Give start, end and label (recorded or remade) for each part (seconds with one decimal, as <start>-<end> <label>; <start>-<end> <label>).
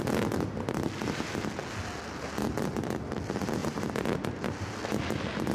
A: 0.0-5.5 recorded